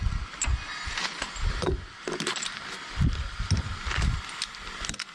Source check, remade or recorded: recorded